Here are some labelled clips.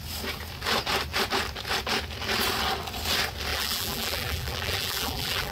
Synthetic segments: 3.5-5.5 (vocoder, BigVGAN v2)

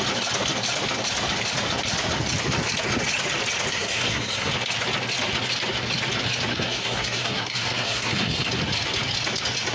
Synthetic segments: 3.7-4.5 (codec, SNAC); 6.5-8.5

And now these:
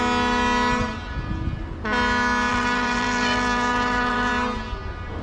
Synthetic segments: 2.5-4.3 (vocoder, BigVGAN v2)

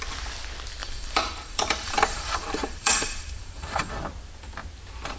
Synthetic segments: 0.8-3.9 (vocoder, BigVGAN v2)